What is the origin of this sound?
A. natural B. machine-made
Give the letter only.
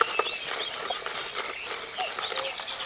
A